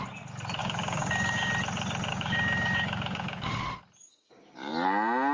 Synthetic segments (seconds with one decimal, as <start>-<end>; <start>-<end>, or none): 0.6-1.5; 2.1-3.6; 4.1-4.7